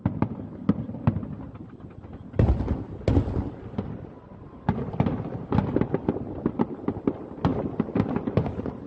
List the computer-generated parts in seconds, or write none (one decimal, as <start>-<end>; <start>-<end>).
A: none